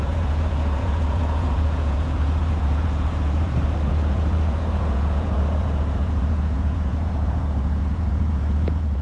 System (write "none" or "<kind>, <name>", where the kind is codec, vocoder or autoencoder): vocoder, Vocos